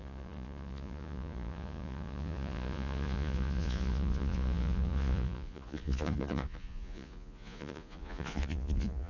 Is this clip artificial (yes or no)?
yes